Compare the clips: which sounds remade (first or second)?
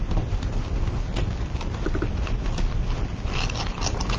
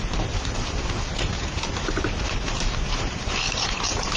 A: second